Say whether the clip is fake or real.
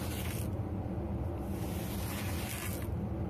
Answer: real